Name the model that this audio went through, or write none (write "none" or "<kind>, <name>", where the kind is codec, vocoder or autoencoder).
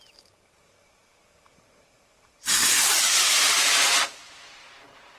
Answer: vocoder, BigVGAN v2